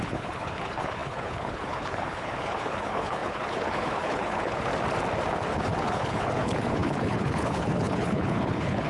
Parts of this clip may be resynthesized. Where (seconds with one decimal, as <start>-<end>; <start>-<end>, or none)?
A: 0.0-4.7; 5.6-8.9